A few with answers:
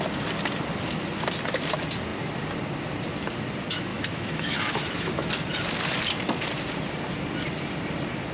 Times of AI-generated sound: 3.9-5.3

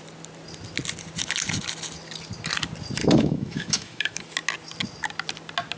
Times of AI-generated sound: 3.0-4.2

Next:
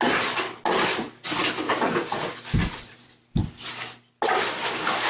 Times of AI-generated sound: none